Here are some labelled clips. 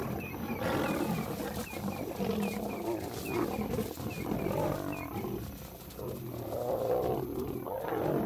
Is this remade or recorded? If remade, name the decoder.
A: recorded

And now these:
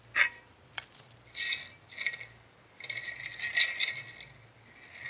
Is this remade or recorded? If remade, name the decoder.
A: recorded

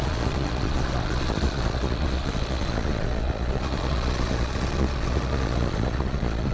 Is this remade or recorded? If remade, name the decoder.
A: remade, vocoder, Vocos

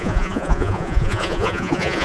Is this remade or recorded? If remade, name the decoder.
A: remade, vocoder, Vocos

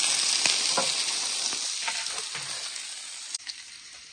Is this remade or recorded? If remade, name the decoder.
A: recorded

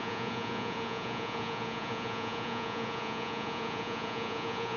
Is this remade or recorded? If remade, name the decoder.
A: remade, vocoder, Vocos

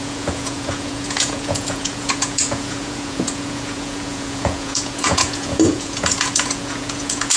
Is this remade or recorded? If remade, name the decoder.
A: remade, vocoder, Vocos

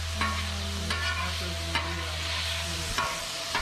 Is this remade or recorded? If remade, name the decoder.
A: recorded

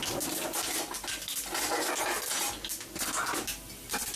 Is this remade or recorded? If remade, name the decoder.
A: recorded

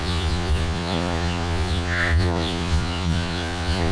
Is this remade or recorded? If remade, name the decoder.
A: remade, vocoder, Vocos